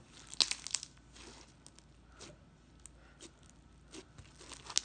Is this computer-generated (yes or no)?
no